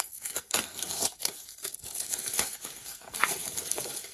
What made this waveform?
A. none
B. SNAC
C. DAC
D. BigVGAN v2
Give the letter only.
B